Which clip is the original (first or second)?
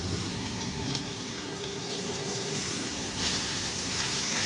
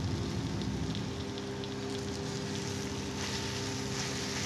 second